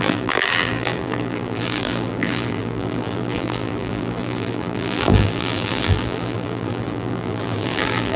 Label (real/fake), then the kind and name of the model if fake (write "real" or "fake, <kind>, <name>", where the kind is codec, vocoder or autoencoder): fake, vocoder, BigVGAN v2